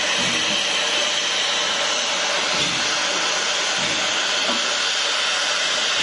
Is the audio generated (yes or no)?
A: no